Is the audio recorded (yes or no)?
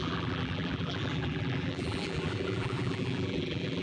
no